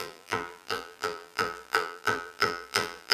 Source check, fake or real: fake